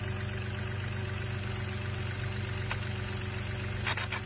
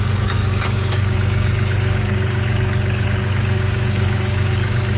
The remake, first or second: second